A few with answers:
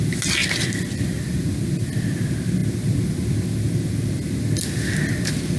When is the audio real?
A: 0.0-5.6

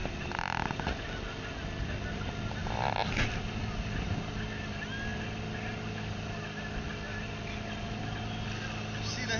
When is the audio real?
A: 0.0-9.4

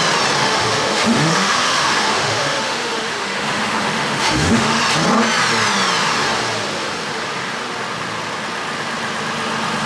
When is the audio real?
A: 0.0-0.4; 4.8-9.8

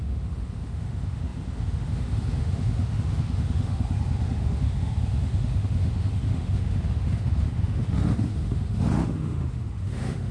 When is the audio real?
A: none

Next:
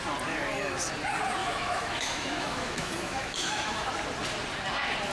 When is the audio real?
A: 0.0-1.4; 3.9-5.1

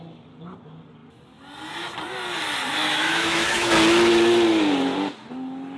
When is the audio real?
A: 0.0-2.8; 3.7-5.8

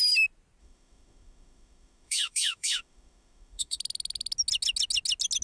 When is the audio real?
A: 0.0-0.6; 3.8-5.4

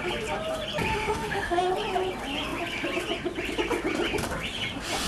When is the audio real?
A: 0.0-0.9; 1.7-5.1